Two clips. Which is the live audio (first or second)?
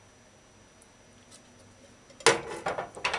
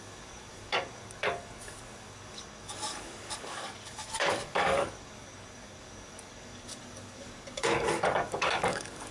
first